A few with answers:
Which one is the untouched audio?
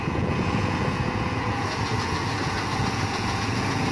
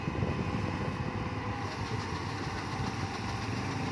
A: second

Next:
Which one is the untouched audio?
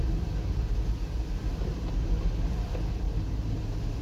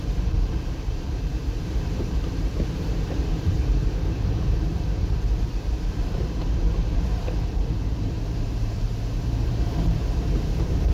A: first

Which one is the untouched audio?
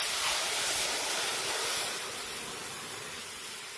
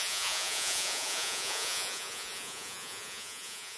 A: first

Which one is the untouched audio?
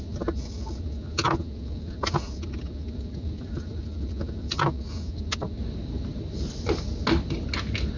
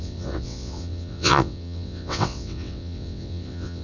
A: first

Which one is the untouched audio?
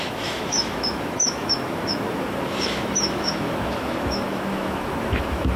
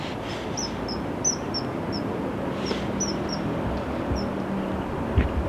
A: second